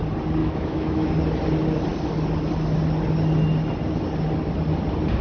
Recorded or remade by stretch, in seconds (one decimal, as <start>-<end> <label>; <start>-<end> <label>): 0.0-0.4 recorded; 0.4-1.1 remade; 1.1-5.2 recorded